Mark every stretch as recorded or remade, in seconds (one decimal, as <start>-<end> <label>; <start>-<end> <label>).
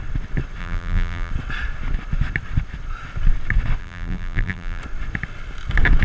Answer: 0.0-0.6 recorded; 0.6-1.3 remade; 1.3-3.8 recorded; 3.8-4.8 remade; 4.8-6.0 recorded